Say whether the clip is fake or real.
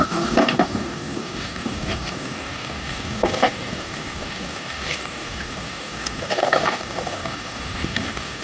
fake